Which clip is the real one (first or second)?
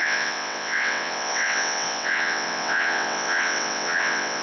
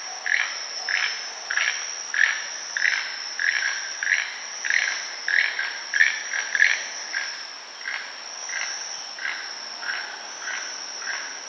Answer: second